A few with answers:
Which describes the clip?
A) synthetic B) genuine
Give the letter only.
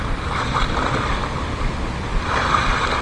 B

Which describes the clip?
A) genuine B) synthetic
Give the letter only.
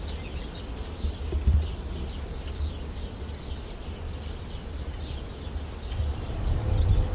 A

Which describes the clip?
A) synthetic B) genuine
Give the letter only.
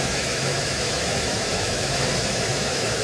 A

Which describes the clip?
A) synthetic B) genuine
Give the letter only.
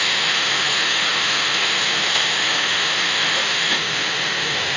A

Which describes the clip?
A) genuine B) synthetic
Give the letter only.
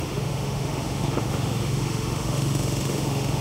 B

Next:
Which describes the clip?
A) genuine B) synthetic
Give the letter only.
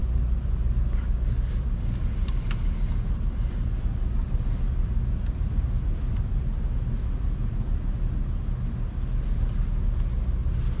A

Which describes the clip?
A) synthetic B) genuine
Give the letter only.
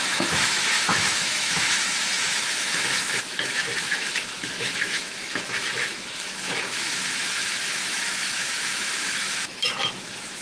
A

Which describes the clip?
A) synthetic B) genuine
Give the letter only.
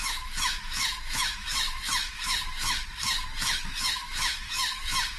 A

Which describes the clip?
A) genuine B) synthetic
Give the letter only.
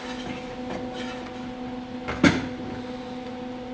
A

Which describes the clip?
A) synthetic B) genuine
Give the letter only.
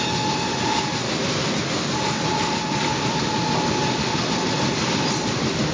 B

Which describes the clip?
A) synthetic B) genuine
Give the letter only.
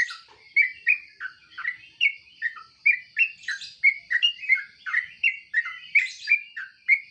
B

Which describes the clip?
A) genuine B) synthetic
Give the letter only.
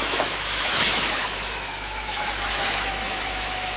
B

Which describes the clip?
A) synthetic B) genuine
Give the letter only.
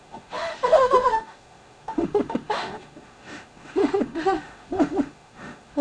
A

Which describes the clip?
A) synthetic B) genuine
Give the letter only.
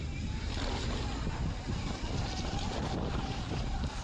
B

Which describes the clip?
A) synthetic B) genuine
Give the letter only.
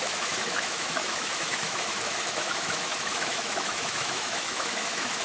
A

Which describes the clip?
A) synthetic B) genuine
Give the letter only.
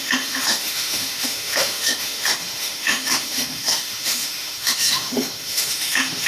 A